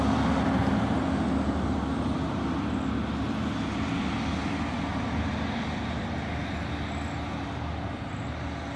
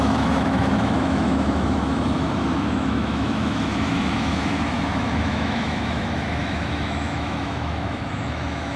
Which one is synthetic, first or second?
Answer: second